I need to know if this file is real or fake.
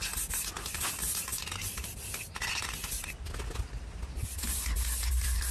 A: real